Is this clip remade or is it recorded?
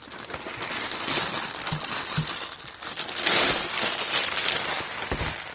recorded